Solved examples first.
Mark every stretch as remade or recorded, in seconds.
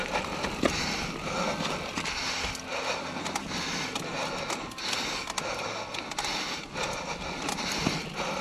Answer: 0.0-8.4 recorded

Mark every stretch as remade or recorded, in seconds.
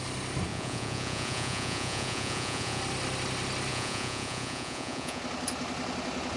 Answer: 0.0-0.5 recorded; 0.5-2.8 remade; 2.8-3.7 recorded; 3.7-5.2 remade; 5.2-6.4 recorded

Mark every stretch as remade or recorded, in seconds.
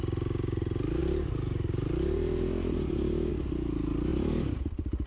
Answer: 0.0-1.0 recorded; 1.0-3.3 remade; 3.3-4.1 recorded; 4.1-5.1 remade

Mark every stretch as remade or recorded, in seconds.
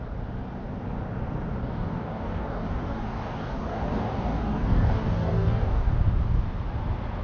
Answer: 0.0-1.6 recorded; 1.6-5.9 remade; 5.9-7.2 recorded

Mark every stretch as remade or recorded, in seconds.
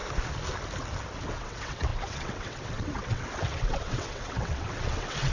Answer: 0.0-1.3 recorded; 1.3-5.3 remade